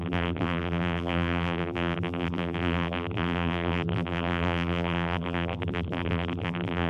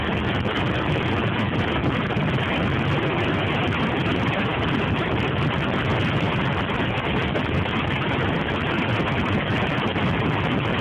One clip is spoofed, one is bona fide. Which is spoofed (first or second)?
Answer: first